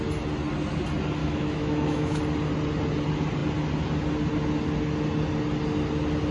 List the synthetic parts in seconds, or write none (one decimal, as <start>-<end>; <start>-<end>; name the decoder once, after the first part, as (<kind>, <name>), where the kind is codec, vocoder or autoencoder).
1.2-2.2 (autoencoder, DAC-VAE)